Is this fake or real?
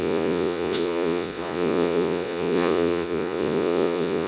fake